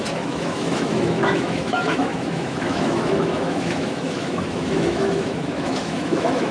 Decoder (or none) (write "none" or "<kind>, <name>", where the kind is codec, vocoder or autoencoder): autoencoder, DAC-VAE